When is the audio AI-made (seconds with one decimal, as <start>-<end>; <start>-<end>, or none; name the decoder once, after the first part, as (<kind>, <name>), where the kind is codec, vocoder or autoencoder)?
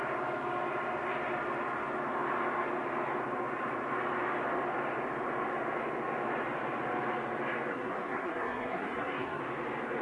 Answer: 7.7-9.4 (codec, SNAC)